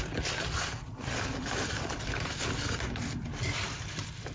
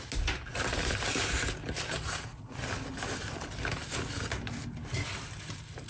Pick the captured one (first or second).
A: second